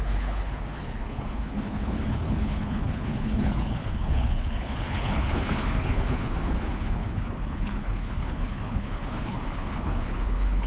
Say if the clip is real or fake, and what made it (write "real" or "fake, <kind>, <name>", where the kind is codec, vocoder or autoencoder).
fake, codec, HILCodec